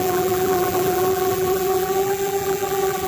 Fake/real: fake